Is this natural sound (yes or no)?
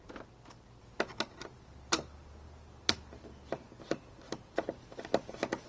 no